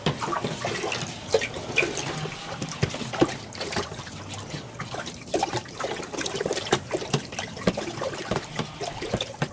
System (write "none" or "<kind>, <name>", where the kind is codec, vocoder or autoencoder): vocoder, BigVGAN v2